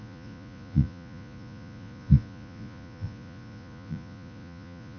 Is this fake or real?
fake